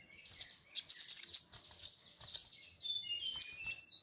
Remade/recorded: recorded